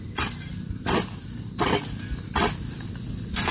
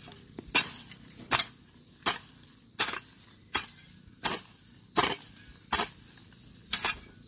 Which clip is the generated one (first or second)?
second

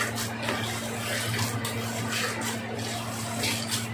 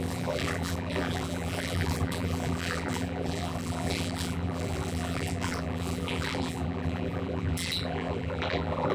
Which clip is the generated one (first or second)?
second